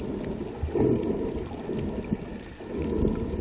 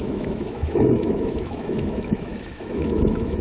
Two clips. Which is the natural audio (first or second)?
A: first